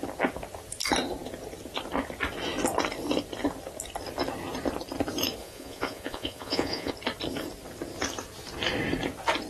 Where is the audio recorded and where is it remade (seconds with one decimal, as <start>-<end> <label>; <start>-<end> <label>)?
0.0-5.4 recorded; 5.4-6.9 remade; 6.9-9.5 recorded